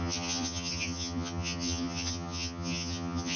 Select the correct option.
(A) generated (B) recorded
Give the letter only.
A